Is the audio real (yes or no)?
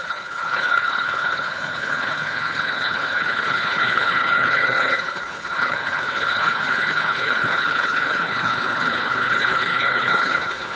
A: no